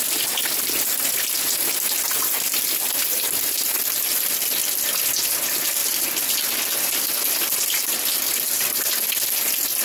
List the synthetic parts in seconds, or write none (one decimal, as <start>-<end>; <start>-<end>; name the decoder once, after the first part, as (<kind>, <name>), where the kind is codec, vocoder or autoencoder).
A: none